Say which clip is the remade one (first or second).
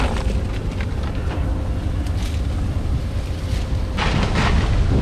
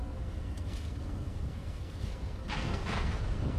second